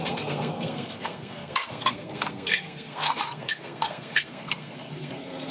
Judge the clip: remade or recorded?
remade